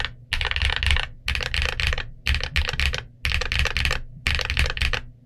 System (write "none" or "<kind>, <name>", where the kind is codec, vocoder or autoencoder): none